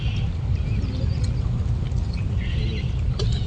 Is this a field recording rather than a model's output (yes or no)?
yes